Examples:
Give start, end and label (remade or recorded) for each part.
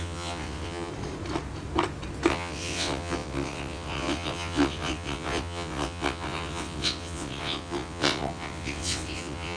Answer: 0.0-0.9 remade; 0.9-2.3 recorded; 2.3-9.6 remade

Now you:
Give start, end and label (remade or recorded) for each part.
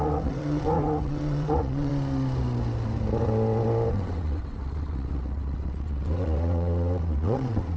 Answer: 0.0-1.9 remade; 1.9-3.9 recorded; 3.9-7.8 remade